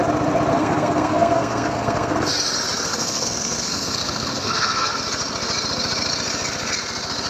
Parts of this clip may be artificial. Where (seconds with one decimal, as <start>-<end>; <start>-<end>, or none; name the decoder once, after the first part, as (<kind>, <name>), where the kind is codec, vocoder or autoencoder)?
0.5-2.3 (codec, SNAC); 2.9-4.9